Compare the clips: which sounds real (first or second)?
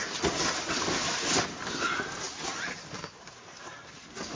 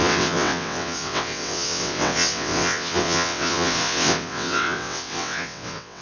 first